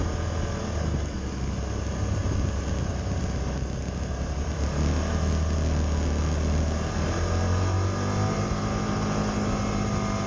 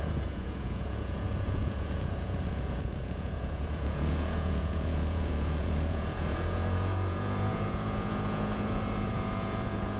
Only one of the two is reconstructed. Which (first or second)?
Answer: second